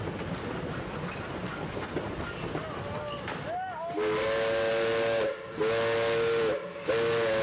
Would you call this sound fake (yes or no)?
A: no